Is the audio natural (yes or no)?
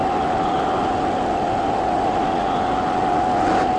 yes